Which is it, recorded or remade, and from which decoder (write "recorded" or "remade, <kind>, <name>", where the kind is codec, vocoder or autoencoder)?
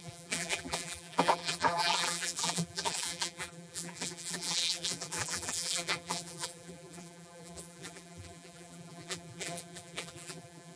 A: remade, vocoder, BigVGAN v2